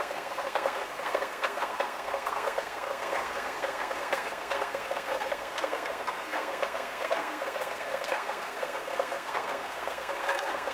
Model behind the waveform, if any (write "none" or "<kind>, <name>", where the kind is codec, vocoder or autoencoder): codec, SNAC